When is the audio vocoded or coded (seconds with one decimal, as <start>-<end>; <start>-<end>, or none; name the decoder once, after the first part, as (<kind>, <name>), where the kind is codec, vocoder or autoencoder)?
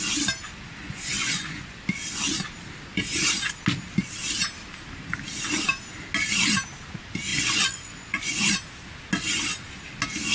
0.8-1.8 (vocoder, Vocos); 7.3-8.5